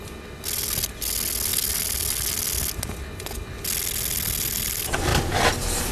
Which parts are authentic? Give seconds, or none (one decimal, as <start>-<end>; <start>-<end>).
0.0-5.9